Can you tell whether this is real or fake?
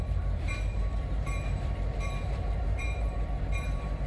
fake